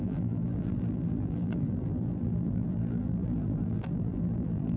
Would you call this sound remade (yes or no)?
yes